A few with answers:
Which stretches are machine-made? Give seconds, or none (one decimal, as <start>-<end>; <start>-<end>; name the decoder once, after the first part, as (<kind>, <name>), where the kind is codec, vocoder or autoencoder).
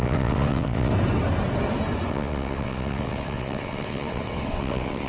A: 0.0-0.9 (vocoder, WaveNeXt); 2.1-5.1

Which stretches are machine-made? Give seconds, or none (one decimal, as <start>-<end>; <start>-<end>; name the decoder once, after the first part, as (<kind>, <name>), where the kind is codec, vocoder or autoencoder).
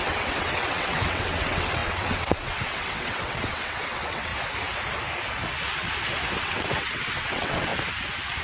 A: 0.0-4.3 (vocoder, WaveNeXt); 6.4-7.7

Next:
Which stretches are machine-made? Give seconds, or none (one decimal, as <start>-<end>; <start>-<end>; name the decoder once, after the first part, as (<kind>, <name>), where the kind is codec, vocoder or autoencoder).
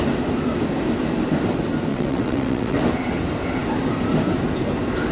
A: 1.9-2.8 (vocoder, WaveNeXt)